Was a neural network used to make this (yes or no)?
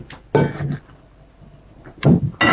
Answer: no